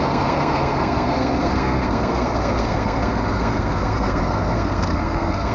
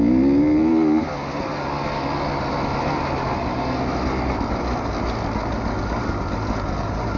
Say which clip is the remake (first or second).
first